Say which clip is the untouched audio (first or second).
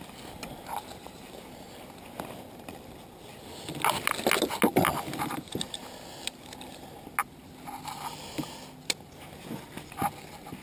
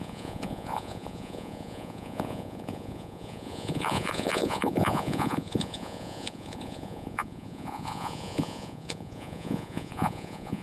first